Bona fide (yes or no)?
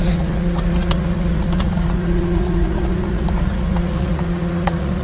no